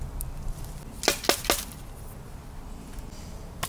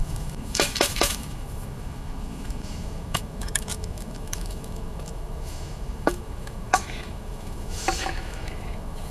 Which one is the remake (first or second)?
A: second